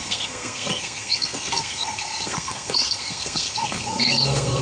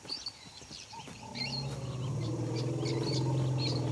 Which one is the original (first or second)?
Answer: second